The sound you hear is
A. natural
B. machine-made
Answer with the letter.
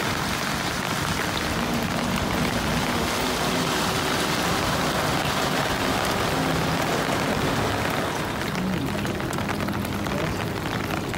A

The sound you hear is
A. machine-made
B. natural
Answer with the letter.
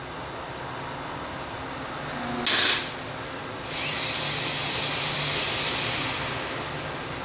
B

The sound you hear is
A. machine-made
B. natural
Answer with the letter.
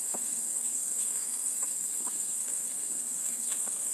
A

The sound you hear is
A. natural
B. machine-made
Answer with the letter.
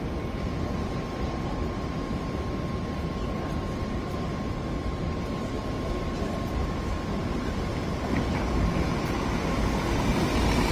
A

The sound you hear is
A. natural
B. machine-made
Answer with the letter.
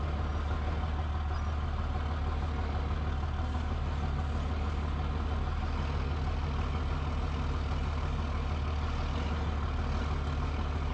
A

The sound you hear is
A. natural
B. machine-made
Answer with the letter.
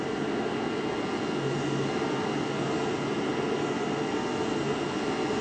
A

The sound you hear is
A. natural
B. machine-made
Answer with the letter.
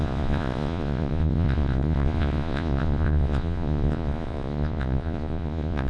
B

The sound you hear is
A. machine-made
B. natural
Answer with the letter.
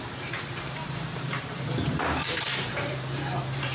A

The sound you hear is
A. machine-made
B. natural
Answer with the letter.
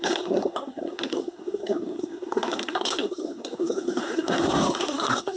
A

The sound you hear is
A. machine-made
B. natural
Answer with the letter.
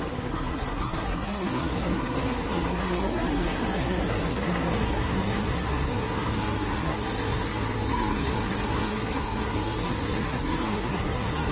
A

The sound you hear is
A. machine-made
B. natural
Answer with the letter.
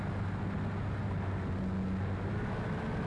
B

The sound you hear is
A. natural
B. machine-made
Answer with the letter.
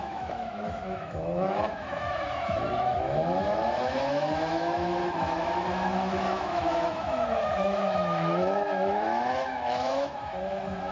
B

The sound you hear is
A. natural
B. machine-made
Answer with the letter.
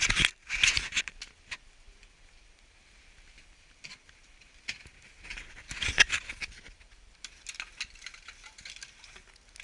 A